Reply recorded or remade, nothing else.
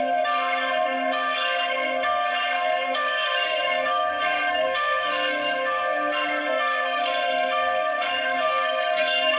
remade